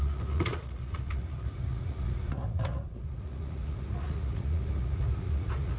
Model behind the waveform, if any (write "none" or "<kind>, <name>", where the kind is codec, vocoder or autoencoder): vocoder, Vocos